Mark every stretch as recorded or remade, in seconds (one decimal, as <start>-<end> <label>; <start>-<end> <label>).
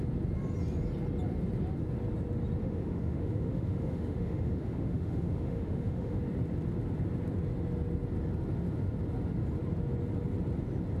0.0-2.6 recorded; 2.6-6.2 remade; 6.2-11.0 recorded